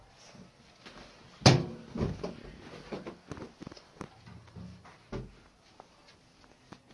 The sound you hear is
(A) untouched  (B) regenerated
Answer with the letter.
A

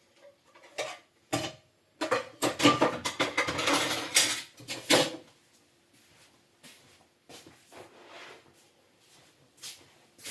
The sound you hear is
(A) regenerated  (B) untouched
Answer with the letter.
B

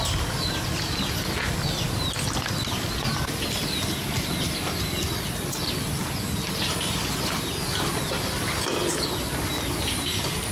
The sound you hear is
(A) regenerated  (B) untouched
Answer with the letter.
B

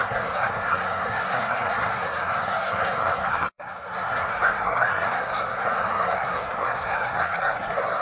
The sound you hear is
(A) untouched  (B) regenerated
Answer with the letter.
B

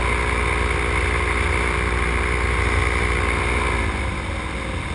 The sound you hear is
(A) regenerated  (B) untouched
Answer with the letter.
B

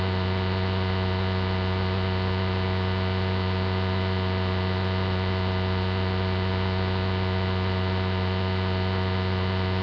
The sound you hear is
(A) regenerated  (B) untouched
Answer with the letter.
B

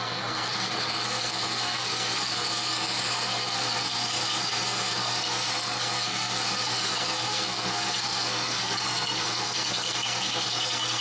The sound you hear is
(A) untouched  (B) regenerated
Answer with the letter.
B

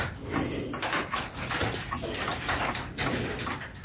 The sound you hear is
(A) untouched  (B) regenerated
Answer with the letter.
A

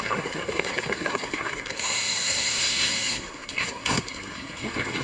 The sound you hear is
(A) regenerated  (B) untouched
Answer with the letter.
A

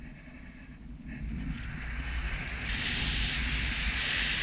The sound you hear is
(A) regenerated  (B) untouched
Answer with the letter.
B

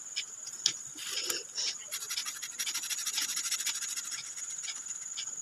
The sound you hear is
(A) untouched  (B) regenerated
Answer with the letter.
A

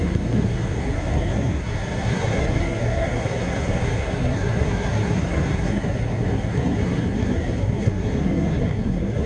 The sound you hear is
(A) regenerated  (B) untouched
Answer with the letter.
A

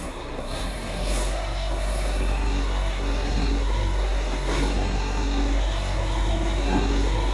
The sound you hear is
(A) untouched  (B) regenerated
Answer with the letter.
B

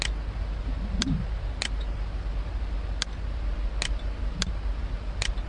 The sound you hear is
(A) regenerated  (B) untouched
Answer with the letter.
B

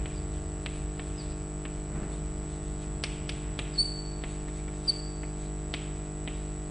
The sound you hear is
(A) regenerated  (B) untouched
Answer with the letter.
B